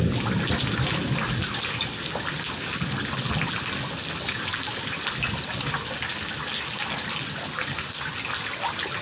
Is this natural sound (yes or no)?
yes